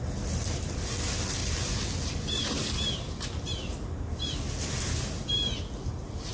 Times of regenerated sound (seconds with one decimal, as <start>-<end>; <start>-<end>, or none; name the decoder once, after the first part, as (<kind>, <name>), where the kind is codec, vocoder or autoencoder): none